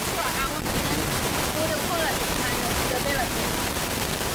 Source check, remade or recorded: recorded